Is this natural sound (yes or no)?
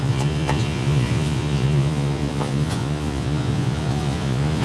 no